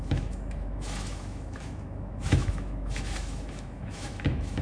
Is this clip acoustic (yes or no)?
no